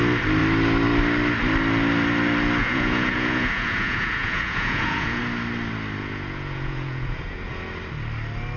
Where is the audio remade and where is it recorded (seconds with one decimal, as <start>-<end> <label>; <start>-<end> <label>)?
0.0-2.6 recorded; 2.6-5.2 remade; 5.2-6.0 recorded; 6.0-7.5 remade; 7.5-8.6 recorded